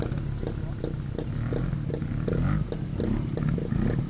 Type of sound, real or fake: real